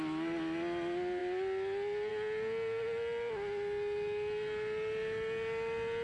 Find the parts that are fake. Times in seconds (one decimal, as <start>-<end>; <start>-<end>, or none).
none